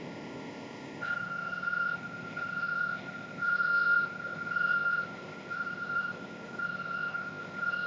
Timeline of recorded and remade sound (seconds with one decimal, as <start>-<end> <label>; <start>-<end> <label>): 0.0-7.9 remade